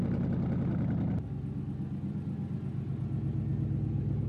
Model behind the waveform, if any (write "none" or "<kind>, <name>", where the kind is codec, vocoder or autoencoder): none